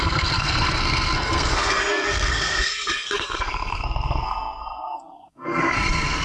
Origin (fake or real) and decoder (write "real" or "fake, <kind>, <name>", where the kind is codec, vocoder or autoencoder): fake, codec, SNAC